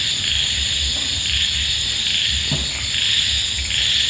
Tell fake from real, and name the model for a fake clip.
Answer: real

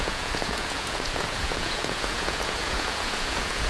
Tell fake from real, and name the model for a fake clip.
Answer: fake, vocoder, Vocos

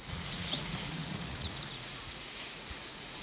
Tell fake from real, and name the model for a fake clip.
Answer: fake, vocoder, Vocos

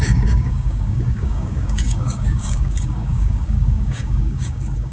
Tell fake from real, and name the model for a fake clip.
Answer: fake, codec, DAC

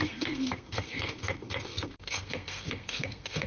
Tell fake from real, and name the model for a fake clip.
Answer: fake, codec, SNAC